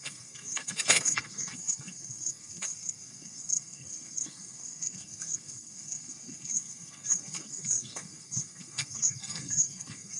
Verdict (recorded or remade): remade